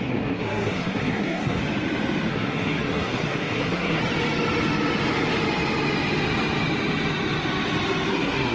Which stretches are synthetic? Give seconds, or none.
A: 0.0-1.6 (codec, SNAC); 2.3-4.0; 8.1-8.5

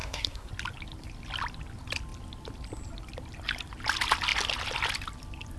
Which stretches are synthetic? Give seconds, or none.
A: 0.0-0.5 (codec, SNAC)